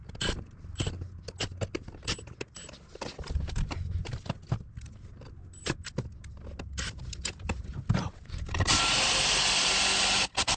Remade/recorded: recorded